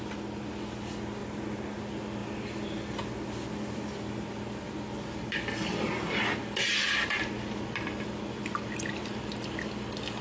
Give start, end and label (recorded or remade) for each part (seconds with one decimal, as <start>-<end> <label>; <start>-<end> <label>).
0.0-10.2 recorded